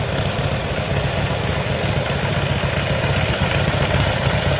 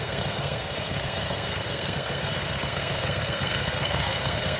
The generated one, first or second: second